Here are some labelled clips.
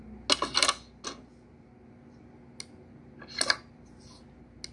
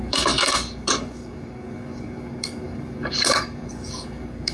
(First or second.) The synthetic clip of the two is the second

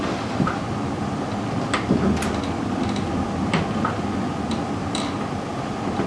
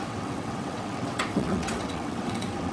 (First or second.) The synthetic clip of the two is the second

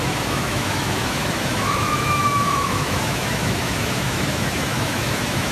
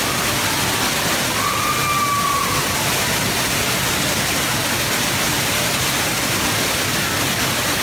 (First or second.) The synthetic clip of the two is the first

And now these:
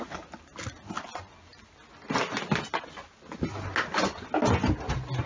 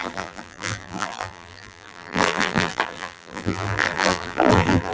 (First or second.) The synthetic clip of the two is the second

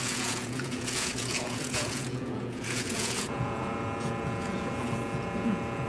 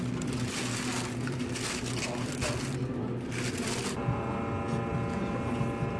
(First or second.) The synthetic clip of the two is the first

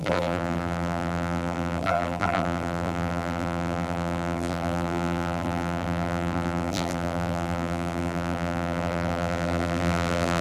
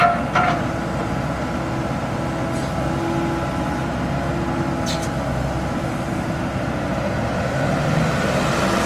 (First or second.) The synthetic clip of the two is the first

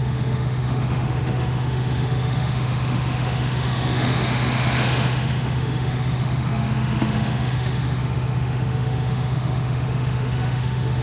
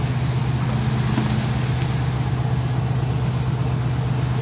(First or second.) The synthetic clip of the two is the first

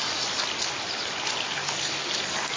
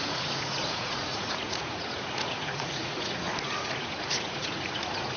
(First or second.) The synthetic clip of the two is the second